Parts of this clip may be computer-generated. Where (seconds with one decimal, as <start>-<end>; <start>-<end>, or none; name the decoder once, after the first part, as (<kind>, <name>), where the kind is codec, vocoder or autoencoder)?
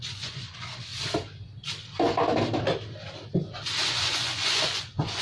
0.0-0.9 (vocoder, Vocos); 3.9-5.2